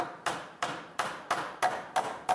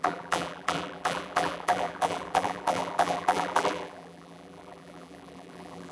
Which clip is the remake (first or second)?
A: second